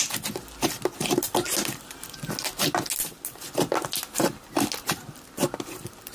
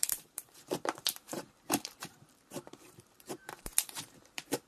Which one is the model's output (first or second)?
second